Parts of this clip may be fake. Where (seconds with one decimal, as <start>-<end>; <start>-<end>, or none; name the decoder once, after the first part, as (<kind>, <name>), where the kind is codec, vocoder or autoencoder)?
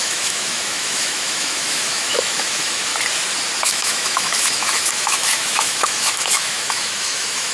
0.0-2.9 (autoencoder, DAC-VAE); 3.6-7.5